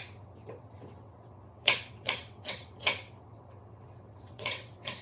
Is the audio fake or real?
fake